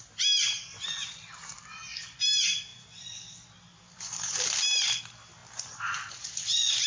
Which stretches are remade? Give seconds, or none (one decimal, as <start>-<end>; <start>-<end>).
none